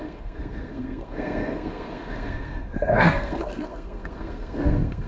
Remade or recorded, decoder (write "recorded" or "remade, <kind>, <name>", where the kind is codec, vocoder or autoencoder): remade, codec, SNAC